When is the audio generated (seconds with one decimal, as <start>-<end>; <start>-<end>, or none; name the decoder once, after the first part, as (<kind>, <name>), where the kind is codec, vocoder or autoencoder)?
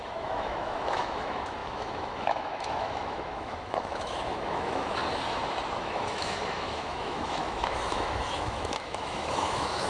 0.0-5.0 (autoencoder, DAC-VAE); 5.8-9.9